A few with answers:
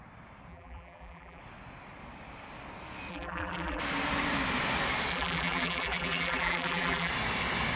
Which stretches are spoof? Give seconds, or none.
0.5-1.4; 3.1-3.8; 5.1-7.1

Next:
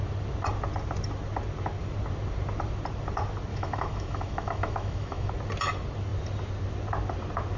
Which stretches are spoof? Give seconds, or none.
3.5-5.3

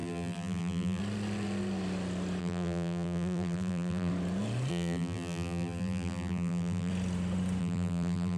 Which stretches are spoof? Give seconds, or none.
0.0-1.0; 2.4-4.1; 4.7-6.9; 7.6-8.4

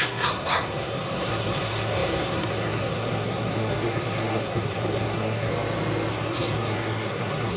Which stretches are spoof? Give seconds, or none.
0.0-5.5; 6.1-7.6

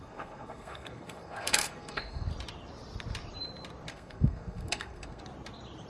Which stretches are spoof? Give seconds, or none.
0.0-2.3; 3.9-5.2

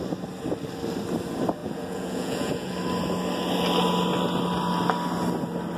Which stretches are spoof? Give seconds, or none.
1.6-2.7

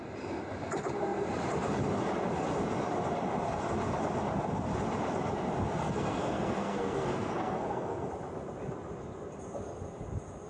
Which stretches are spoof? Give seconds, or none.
5.8-8.1